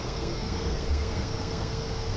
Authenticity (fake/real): fake